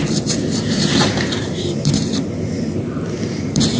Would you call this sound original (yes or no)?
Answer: no